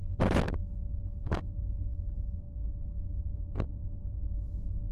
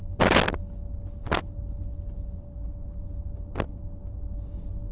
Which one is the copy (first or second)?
first